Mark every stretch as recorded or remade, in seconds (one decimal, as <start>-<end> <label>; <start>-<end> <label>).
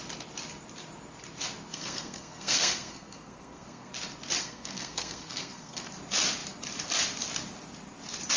0.0-1.7 recorded; 1.7-3.9 remade; 3.9-4.4 recorded; 4.4-5.8 remade; 5.8-8.4 recorded